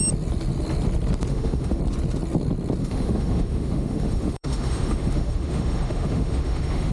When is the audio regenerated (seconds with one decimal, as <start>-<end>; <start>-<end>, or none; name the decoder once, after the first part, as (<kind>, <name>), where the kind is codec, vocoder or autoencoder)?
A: 1.3-1.8 (autoencoder, DAC-VAE); 2.8-6.9